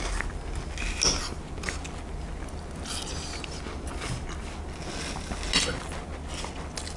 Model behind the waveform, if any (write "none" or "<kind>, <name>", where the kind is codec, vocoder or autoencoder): none